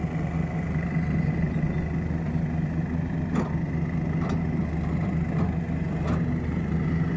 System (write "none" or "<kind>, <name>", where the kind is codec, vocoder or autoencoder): none